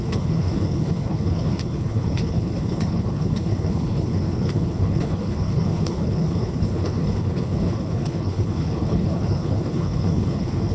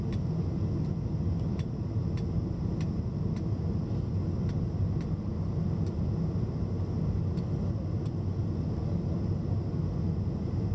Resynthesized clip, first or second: first